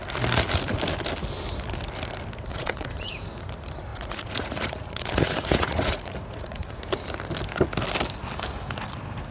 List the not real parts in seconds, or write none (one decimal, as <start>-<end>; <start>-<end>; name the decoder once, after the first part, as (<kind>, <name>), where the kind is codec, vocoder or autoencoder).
2.5-3.1 (vocoder, Vocos); 3.9-6.8